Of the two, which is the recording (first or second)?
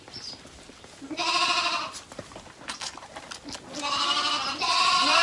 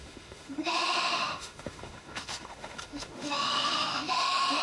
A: first